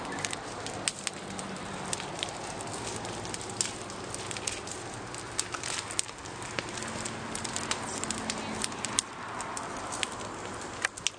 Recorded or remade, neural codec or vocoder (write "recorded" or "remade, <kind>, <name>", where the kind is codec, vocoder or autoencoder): recorded